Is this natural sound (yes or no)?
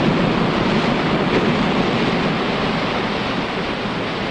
yes